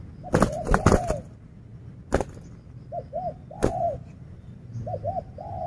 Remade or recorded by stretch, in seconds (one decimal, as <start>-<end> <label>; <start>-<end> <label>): 0.0-5.7 recorded